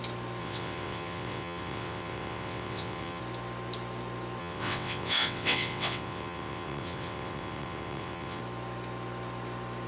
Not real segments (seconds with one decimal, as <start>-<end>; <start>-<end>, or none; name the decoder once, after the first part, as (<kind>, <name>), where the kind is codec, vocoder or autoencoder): 0.4-3.2 (vocoder, WaveNeXt); 4.4-8.4